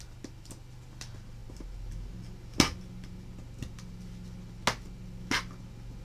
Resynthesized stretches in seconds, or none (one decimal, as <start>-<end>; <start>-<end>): none